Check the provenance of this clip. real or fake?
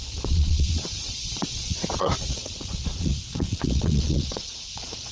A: fake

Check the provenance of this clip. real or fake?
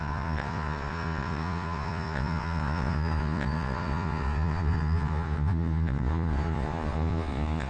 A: fake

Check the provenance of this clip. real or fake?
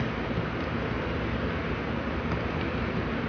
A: real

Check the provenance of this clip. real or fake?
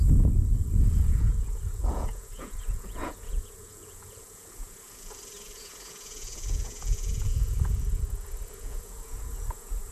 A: fake